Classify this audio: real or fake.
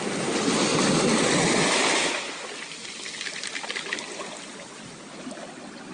real